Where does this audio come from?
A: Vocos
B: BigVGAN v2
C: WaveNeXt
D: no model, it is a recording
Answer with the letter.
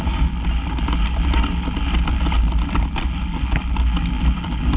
D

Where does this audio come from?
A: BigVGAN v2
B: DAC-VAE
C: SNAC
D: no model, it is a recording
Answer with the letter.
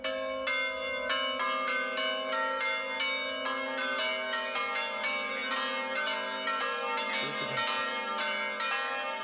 D